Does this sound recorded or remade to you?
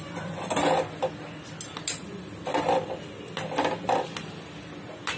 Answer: recorded